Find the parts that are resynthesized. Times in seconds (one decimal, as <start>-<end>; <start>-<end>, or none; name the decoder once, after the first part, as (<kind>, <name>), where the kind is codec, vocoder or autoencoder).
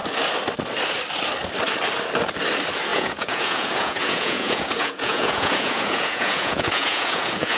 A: 2.9-7.6 (vocoder, Vocos)